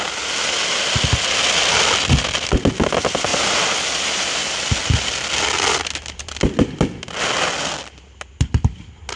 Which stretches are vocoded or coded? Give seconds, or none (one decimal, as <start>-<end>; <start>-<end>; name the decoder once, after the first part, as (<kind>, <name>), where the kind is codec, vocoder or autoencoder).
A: none